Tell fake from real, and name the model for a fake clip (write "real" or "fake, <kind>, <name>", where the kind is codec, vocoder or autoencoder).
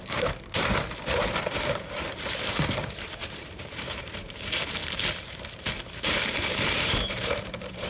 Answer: fake, vocoder, BigVGAN v2